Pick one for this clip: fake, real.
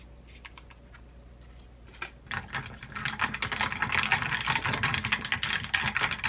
real